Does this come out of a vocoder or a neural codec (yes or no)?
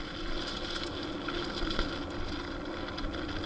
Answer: no